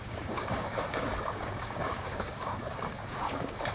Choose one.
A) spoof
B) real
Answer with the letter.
A